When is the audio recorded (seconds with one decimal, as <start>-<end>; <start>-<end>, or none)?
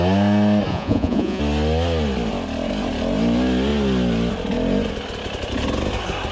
0.0-0.7; 1.4-6.3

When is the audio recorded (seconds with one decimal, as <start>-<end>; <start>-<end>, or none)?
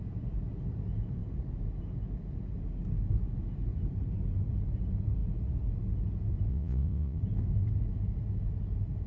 0.0-6.5; 7.2-9.1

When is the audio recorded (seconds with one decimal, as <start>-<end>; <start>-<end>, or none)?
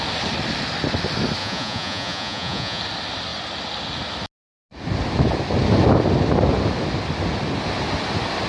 0.0-1.4; 2.8-8.5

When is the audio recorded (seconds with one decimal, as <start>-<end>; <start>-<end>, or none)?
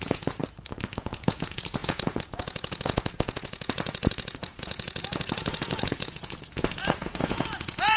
0.4-1.0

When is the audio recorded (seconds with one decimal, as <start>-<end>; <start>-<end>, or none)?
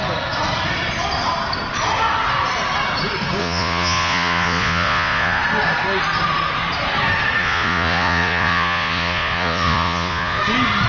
0.0-3.4; 5.4-7.4; 10.4-10.9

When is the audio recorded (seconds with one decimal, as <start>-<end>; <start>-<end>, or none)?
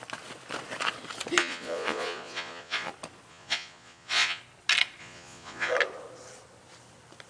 0.0-1.4; 2.9-3.3; 4.4-5.0; 5.7-7.3